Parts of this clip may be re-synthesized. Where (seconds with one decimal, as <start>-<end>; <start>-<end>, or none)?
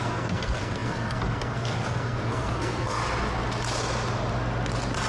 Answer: 0.0-3.0